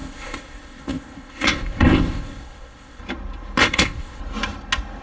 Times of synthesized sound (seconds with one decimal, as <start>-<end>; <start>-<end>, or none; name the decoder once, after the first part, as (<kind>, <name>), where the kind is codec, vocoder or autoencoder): 0.0-3.0 (codec, ZipCodec); 3.6-4.2